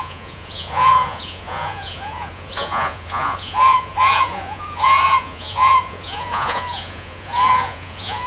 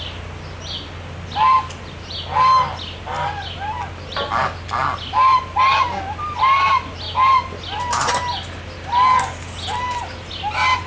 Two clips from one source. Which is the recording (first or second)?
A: second